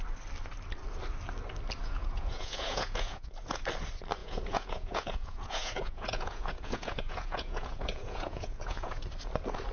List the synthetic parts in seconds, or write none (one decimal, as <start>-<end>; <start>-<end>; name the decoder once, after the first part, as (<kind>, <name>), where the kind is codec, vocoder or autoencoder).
1.8-3.6 (vocoder, Vocos); 4.2-9.0